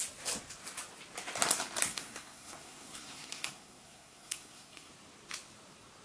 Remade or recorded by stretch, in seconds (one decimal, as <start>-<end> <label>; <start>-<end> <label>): 0.0-1.9 recorded; 1.9-4.9 remade; 4.9-6.0 recorded